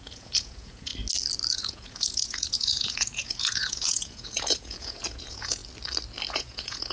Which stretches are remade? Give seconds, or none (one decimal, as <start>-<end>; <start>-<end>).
0.0-0.9; 1.5-5.6; 6.3-6.9